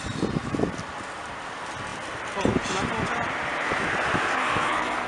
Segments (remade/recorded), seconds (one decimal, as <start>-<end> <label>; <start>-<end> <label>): 0.0-4.3 recorded; 4.3-5.1 remade